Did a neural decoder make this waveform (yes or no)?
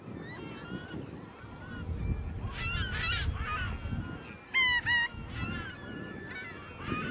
no